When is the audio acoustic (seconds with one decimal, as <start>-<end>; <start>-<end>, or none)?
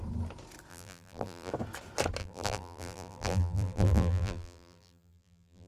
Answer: 0.0-0.7; 1.5-2.2